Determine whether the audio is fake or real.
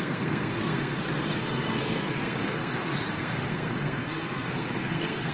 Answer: fake